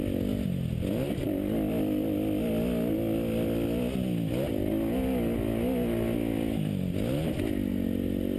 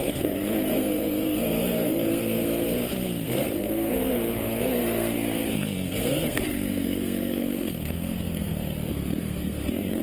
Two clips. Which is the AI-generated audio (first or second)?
second